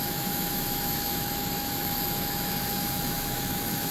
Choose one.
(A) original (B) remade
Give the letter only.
B